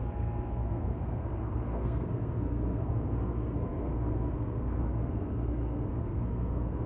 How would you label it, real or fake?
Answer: fake